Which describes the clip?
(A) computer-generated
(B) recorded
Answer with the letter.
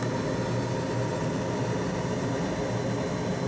B